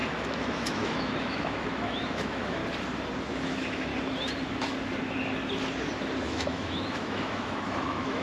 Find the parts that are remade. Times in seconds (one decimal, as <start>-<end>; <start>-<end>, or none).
0.0-2.6; 3.2-3.9; 6.2-8.2